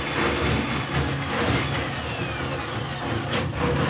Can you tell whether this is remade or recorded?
recorded